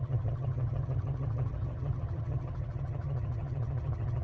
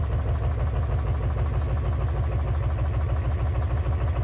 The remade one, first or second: first